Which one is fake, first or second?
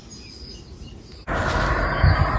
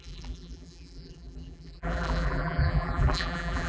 second